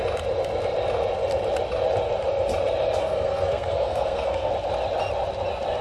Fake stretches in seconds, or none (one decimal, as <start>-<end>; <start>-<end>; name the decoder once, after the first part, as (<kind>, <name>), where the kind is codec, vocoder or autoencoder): 3.0-4.5 (codec, SNAC)

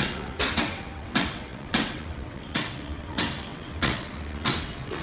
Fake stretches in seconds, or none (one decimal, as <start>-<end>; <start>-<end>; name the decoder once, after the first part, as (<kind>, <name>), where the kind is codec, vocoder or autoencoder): 0.0-5.0 (vocoder, WaveNeXt)

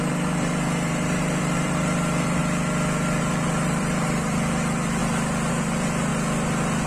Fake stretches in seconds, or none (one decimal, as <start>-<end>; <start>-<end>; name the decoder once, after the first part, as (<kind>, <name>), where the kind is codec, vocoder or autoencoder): 0.0-2.4 (vocoder, BigVGAN v2); 3.2-5.0; 5.5-6.1

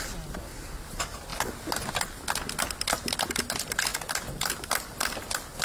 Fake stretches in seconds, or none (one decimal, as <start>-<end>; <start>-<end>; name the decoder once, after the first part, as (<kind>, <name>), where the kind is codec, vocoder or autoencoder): none

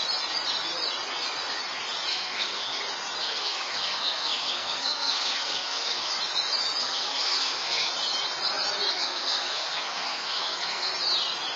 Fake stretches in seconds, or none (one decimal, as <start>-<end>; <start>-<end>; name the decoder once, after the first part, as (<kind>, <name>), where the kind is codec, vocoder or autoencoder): 2.1-2.8 (codec, SNAC); 3.2-6.1; 6.8-7.9; 8.9-10.9

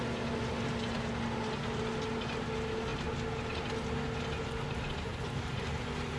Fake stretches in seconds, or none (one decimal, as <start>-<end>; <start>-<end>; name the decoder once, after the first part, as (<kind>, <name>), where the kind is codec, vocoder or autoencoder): 5.1-5.7 (vocoder, BigVGAN v2)

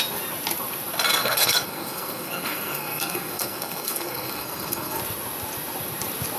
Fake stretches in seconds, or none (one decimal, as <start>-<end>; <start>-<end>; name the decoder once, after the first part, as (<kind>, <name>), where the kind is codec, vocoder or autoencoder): 1.2-5.0 (codec, SNAC)

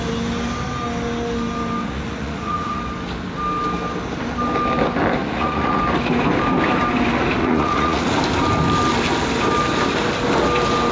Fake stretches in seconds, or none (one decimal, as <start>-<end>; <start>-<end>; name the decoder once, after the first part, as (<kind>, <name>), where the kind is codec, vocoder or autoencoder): 1.8-2.8 (vocoder, Vocos); 5.2-5.8; 7.4-8.2